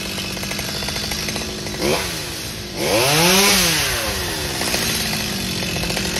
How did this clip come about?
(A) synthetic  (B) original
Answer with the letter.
B